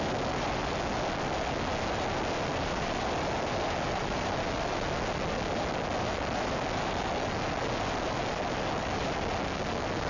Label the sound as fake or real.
real